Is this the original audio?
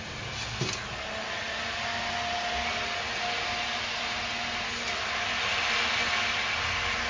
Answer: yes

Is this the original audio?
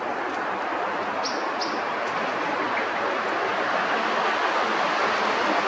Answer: yes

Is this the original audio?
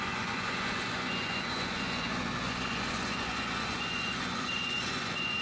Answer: no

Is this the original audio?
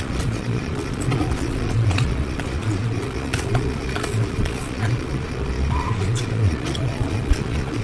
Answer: no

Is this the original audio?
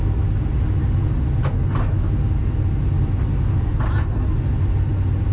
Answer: yes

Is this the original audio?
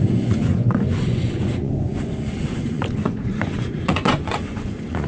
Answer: no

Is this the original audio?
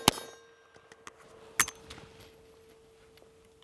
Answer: yes